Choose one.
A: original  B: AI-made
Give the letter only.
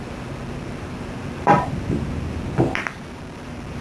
B